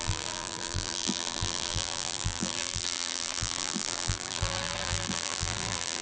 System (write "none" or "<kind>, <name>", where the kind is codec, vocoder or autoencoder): vocoder, BigVGAN v2